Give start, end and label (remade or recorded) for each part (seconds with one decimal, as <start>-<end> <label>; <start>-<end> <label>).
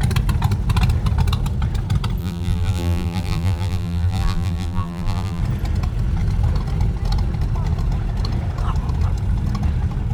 0.0-2.2 recorded; 2.2-5.4 remade; 5.4-10.1 recorded